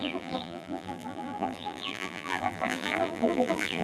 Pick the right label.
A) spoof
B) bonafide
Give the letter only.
A